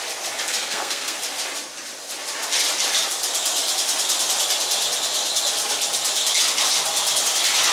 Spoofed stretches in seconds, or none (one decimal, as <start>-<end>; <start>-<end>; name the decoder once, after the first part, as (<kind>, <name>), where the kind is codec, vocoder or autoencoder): 0.5-1.2 (codec, SNAC)